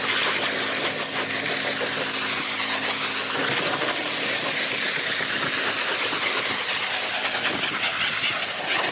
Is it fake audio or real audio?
real